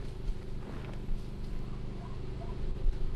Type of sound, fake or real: real